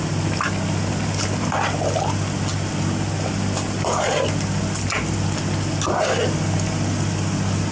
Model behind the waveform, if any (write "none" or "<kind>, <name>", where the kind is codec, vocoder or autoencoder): none